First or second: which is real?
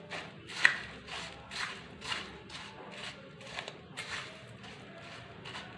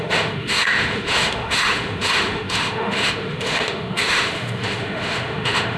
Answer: first